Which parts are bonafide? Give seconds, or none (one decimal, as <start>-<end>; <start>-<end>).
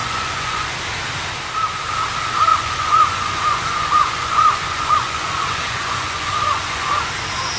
0.7-2.5; 7.1-7.6